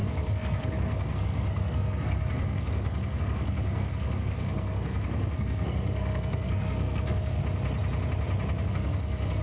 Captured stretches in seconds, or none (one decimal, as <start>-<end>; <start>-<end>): 7.4-8.7